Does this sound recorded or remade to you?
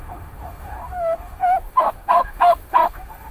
remade